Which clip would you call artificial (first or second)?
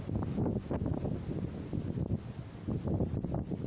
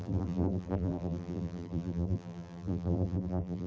second